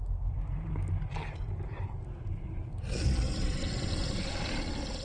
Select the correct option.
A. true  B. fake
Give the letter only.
B